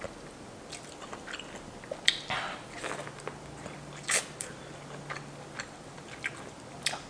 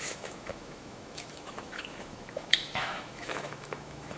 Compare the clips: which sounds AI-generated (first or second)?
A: second